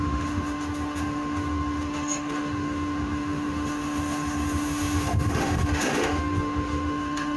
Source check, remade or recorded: remade